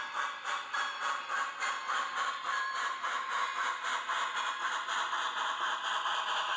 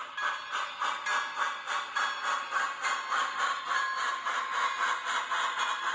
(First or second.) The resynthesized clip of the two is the first